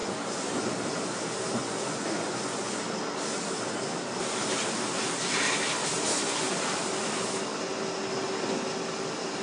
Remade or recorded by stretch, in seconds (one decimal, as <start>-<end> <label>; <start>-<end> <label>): 0.0-0.7 remade; 0.7-1.6 recorded; 1.6-2.8 remade; 2.8-6.1 recorded; 6.1-6.6 remade; 6.6-9.4 recorded